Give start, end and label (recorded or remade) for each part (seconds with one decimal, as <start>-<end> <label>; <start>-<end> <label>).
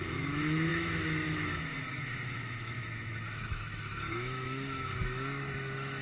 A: 0.0-6.0 remade